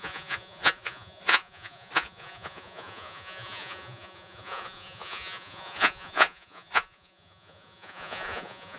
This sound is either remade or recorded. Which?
remade